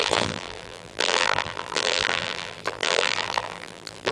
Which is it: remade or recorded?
remade